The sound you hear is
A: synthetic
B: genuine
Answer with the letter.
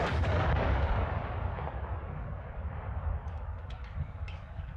A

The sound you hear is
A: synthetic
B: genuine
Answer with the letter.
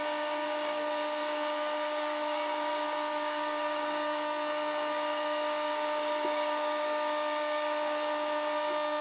A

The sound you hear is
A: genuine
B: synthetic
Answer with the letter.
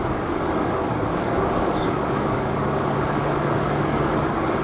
B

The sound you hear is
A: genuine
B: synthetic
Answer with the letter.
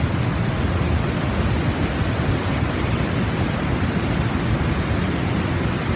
A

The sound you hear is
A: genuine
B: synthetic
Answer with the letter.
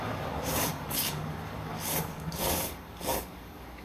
B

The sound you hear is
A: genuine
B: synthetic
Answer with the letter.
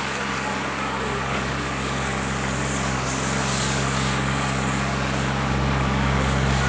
B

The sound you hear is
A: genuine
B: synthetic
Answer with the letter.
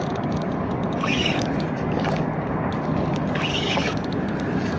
B